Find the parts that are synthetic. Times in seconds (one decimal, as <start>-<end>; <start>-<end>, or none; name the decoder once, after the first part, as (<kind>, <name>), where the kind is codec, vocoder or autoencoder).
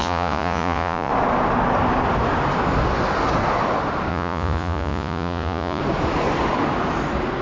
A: 0.0-1.1 (vocoder, Vocos); 4.1-5.8